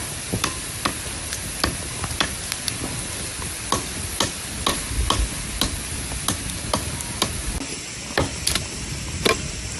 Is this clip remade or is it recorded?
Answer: recorded